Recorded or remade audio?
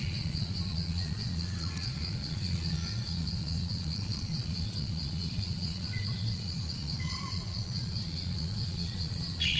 remade